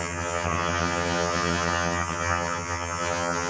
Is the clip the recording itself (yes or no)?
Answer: no